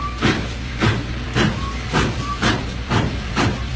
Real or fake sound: fake